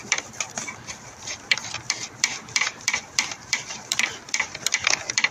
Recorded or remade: remade